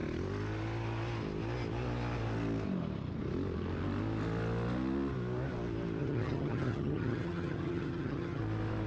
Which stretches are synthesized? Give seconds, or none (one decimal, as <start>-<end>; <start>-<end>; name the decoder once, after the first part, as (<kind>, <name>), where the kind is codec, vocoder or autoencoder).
6.0-8.4 (vocoder, HiFi-GAN)